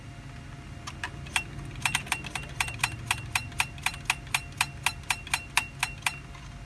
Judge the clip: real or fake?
real